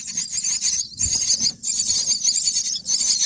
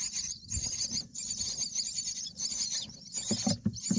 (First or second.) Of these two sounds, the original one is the first